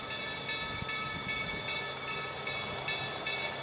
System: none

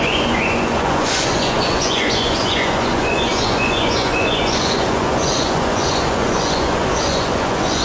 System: vocoder, Vocos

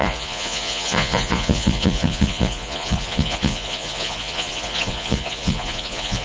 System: vocoder, Vocos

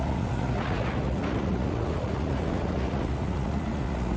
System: vocoder, Vocos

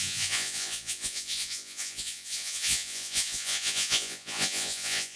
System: vocoder, Vocos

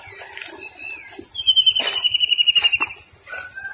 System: none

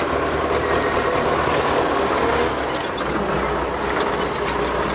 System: none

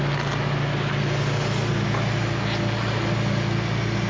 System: none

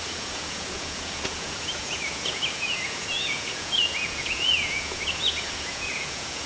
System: vocoder, Vocos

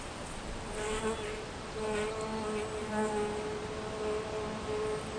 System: none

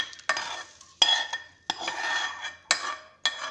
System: none